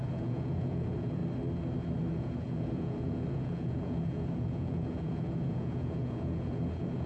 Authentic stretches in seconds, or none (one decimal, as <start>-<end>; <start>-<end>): 1.2-2.1